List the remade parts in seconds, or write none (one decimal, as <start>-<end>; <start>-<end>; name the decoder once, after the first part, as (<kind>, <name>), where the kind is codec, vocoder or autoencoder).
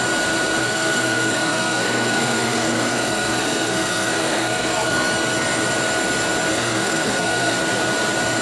0.6-5.1 (codec, SNAC); 6.5-7.6